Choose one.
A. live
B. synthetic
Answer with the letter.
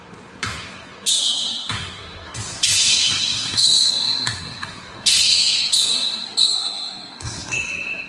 B